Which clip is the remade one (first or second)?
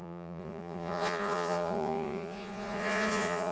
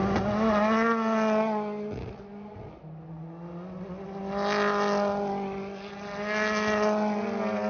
first